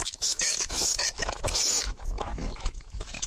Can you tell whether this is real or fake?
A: fake